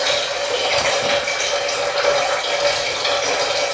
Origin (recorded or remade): recorded